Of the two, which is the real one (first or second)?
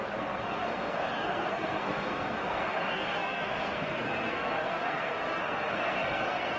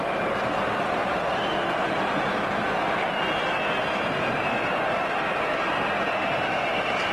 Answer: second